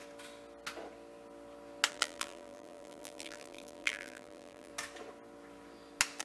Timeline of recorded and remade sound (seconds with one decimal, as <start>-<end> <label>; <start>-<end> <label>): 0.0-1.9 recorded; 1.9-4.7 remade; 4.7-6.2 recorded